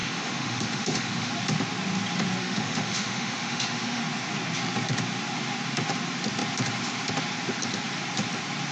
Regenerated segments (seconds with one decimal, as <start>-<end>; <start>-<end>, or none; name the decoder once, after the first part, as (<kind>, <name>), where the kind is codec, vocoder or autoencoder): 0.0-1.3 (autoencoder, DAC-VAE); 2.4-4.0

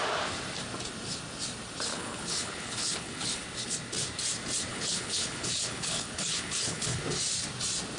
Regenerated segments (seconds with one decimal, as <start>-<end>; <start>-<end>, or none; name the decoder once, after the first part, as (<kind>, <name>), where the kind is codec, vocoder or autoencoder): 1.9-3.4 (codec, HILCodec); 4.7-7.0

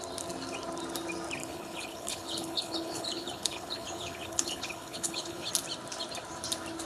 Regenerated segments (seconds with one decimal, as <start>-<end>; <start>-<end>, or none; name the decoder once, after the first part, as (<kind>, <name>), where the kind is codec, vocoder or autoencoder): 1.4-5.5 (codec, HILCodec)